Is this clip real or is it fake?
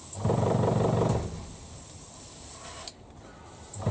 real